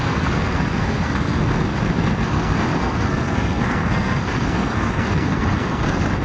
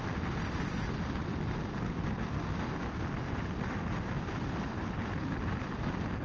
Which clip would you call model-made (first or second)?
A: first